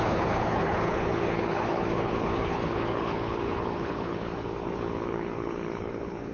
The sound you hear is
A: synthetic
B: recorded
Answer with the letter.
A